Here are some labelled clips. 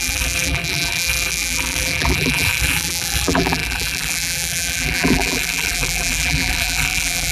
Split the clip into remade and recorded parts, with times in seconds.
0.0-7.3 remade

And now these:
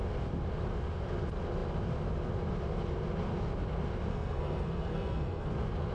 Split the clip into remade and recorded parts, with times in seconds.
0.0-4.1 recorded; 4.1-5.5 remade; 5.5-5.9 recorded